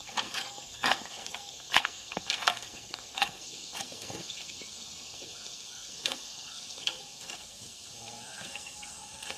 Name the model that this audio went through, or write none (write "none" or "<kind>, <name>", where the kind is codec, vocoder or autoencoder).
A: codec, SNAC